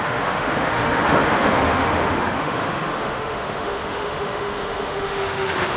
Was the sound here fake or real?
fake